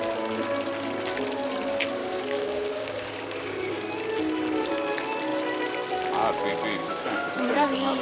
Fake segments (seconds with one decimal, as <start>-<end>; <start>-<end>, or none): 2.0-3.9; 6.8-8.0